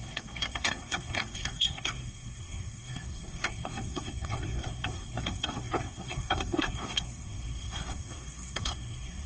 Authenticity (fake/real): fake